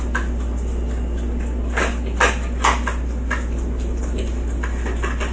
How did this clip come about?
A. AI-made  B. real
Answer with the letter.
B